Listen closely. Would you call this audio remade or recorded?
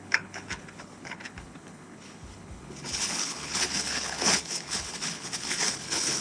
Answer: remade